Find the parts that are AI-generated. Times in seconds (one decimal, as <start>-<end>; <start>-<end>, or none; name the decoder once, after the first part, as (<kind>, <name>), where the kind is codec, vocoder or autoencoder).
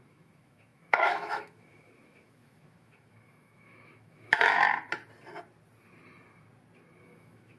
0.0-4.7 (autoencoder, DAC-VAE); 7.0-7.6